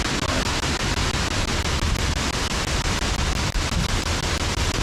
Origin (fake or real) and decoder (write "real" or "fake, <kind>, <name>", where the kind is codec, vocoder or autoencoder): real